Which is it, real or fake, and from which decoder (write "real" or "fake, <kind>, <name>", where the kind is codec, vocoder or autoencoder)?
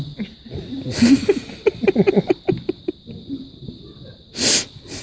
real